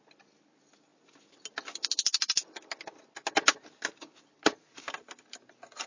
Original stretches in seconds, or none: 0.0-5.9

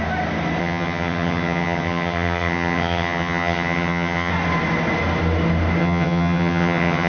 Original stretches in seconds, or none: 0.0-0.6; 4.3-5.8